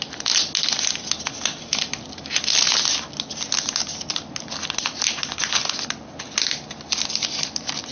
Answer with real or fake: real